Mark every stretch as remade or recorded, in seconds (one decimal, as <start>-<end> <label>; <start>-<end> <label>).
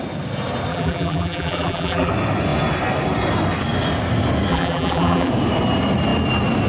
0.0-0.7 recorded; 0.7-2.1 remade; 2.1-4.5 recorded; 4.5-5.3 remade; 5.3-6.7 recorded